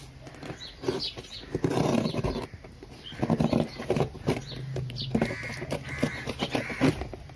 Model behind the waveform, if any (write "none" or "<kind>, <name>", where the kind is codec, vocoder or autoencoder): none